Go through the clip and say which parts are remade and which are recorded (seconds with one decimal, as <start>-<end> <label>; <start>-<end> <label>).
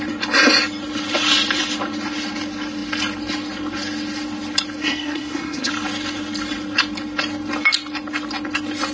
0.0-4.8 recorded; 4.8-5.7 remade; 5.7-8.9 recorded